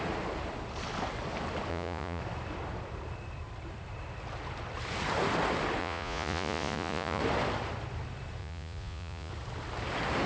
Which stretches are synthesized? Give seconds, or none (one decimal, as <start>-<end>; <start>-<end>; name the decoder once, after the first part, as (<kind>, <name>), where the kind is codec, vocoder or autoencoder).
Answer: 1.7-2.2 (vocoder, Vocos); 5.8-7.2; 8.4-9.3